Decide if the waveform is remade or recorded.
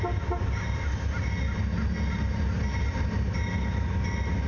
recorded